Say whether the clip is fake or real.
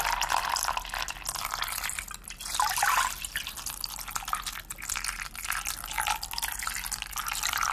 real